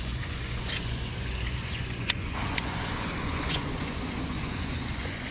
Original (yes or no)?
no